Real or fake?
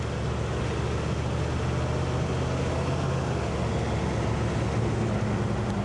real